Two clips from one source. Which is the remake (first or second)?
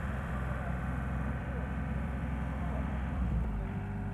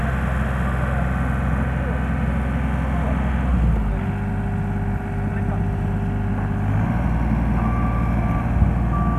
first